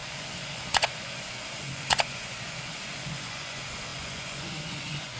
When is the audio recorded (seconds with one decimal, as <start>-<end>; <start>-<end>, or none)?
none